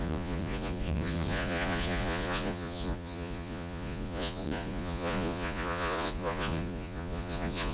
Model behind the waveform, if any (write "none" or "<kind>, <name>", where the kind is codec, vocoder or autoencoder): vocoder, Vocos